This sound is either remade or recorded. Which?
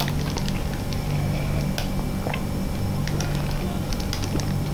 recorded